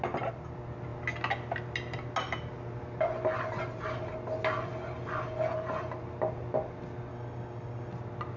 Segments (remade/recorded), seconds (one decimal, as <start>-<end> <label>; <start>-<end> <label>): 0.0-7.1 recorded; 7.1-7.9 remade; 7.9-8.4 recorded